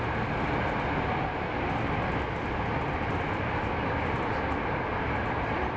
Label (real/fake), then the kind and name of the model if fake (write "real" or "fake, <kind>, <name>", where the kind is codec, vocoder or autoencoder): real